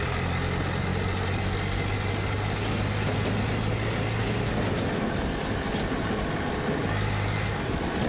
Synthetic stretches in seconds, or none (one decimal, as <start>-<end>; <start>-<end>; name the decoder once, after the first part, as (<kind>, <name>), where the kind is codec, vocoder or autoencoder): none